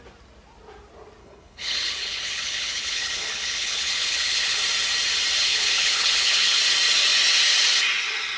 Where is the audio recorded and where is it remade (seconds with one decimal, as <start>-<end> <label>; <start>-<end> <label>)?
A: 0.0-1.2 recorded; 1.2-4.6 remade; 4.6-5.4 recorded; 5.4-6.6 remade; 6.6-8.4 recorded